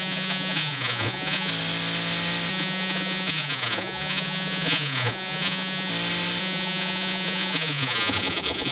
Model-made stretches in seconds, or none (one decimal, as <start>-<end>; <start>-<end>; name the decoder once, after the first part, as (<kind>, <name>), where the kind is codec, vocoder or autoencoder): 0.0-1.5 (vocoder, Vocos); 2.5-5.9; 6.4-8.7

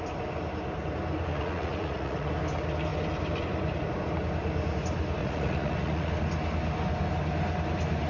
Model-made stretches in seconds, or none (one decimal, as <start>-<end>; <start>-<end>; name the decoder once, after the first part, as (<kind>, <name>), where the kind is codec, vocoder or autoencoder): 1.3-2.3 (vocoder, Vocos); 5.2-6.1